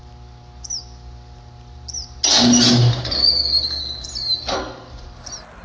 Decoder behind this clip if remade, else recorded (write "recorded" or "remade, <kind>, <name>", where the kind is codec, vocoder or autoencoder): recorded